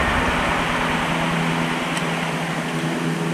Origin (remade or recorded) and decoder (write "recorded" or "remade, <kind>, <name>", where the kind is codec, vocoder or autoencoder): recorded